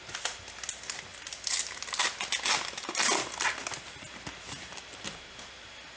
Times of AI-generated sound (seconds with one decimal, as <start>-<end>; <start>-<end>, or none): none